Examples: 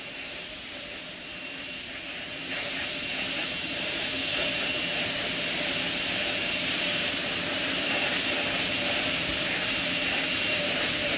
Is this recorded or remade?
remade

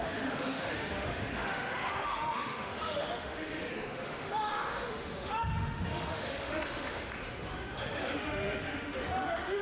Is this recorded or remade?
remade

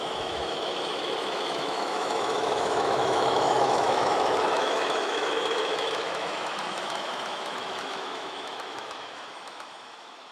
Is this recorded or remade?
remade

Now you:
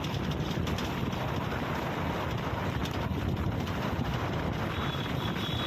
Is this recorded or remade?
recorded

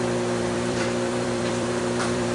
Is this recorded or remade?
remade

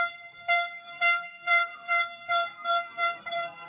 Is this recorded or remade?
remade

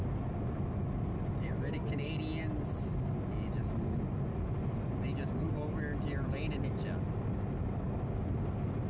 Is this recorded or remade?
recorded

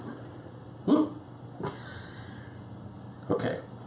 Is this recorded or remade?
remade